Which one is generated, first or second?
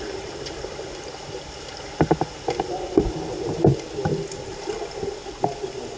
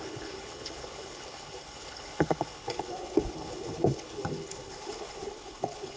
second